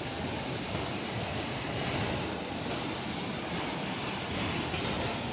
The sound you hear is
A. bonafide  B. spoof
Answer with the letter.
A